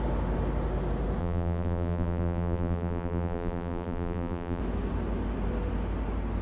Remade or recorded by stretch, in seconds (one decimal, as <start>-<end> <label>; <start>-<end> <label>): 0.0-1.2 recorded; 1.2-4.6 remade; 4.6-6.4 recorded